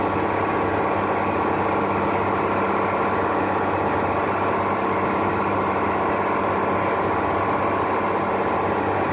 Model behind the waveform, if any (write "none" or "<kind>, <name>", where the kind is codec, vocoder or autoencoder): none